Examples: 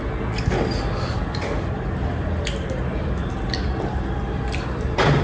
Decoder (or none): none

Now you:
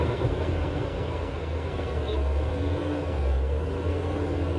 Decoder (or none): codec, SNAC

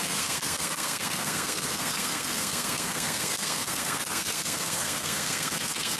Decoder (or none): codec, SNAC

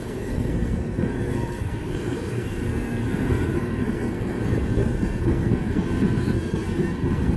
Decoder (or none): codec, SNAC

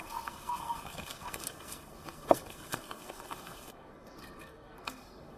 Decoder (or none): codec, SNAC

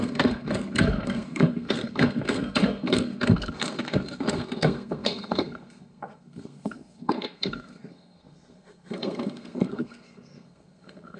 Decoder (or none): codec, SNAC